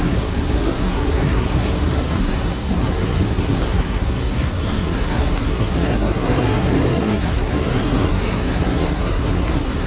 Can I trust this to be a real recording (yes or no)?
no